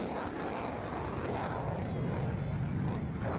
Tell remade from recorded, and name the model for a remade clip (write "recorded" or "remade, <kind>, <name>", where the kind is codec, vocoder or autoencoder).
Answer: recorded